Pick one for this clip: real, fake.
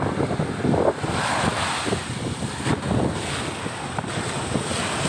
real